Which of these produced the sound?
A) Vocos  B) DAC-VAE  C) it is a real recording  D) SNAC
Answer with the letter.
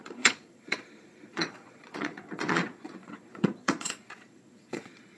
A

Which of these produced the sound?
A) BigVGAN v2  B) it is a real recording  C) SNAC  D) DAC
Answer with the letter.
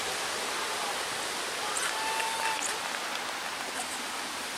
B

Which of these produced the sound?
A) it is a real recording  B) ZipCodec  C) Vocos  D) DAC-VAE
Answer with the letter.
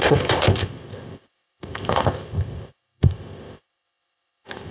B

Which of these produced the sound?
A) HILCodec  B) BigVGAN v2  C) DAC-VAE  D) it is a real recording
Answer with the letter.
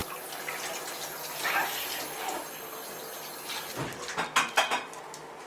D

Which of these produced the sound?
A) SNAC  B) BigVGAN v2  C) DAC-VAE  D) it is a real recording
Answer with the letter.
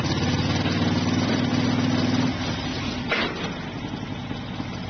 D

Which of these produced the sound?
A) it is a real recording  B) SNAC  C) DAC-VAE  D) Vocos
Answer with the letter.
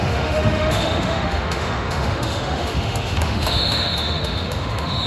C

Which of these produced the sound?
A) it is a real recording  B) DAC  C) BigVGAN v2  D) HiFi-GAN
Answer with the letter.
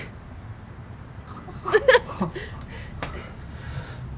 A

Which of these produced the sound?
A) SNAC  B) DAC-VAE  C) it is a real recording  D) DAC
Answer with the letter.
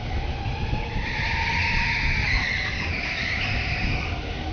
C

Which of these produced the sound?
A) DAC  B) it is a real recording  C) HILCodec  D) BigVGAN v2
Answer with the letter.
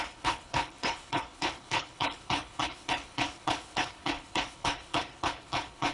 C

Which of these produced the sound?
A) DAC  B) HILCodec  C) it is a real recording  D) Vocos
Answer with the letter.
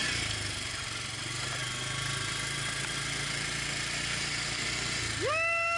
C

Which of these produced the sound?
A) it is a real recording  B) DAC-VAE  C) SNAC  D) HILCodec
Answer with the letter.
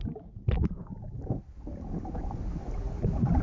A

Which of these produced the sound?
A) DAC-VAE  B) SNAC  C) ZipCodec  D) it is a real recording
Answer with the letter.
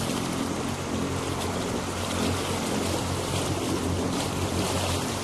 D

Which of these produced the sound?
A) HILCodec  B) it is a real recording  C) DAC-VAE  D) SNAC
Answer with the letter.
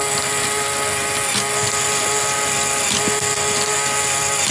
B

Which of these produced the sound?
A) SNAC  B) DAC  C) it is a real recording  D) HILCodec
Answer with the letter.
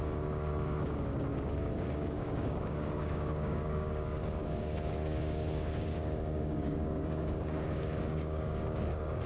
B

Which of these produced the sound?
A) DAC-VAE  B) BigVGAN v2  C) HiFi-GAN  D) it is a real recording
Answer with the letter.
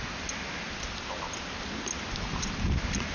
D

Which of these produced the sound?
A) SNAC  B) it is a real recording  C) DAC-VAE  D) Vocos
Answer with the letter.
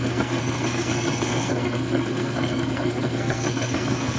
A